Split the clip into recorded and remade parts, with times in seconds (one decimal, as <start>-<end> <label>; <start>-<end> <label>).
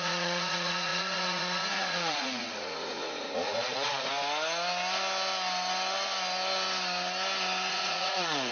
0.0-4.1 remade; 4.1-7.7 recorded; 7.7-8.5 remade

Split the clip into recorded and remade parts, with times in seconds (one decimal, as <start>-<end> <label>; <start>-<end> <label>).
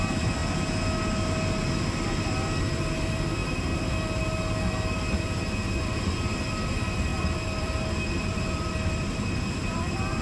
0.0-0.4 remade; 0.4-2.6 recorded; 2.6-3.4 remade; 3.4-5.8 recorded; 5.8-10.2 remade